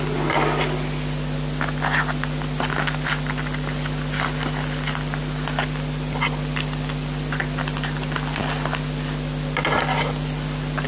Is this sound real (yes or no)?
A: yes